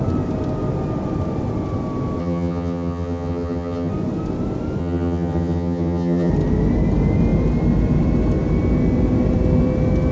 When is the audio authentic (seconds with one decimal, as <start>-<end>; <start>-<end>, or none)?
0.0-2.2; 3.9-4.8; 6.3-10.1